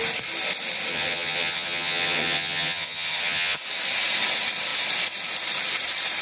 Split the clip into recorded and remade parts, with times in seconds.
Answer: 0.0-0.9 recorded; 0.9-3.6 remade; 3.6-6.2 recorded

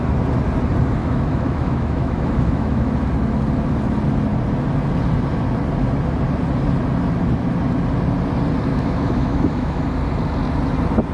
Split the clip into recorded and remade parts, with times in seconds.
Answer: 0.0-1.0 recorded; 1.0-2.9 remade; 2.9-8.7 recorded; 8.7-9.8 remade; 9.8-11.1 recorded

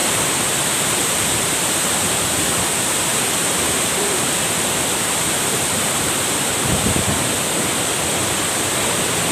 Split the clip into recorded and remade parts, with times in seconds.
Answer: 0.0-2.3 remade; 2.3-3.1 recorded; 3.1-6.5 remade; 6.5-9.3 recorded